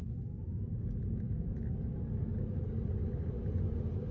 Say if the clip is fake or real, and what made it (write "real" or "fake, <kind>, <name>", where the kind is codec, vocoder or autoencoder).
real